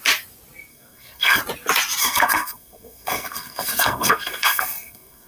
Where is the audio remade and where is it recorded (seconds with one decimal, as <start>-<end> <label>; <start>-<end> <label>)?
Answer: 0.0-0.7 recorded; 0.7-1.4 remade; 1.4-2.0 recorded; 2.0-5.3 remade